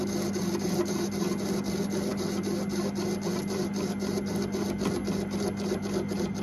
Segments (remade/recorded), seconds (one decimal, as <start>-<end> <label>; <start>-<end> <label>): 0.0-6.4 recorded